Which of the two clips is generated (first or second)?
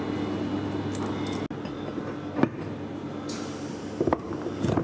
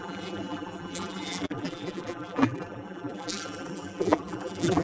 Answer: second